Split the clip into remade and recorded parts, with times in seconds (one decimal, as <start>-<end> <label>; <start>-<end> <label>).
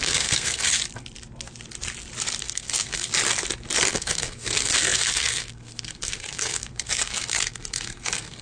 0.0-0.7 remade; 0.7-2.4 recorded; 2.4-3.1 remade; 3.1-3.9 recorded; 3.9-8.4 remade